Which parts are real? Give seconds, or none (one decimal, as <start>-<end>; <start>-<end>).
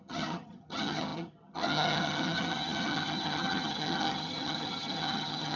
none